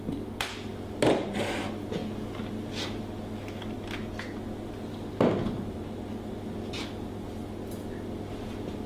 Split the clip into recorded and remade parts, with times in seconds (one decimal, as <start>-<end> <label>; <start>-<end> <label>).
0.0-8.9 recorded